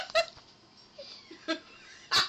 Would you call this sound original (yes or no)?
yes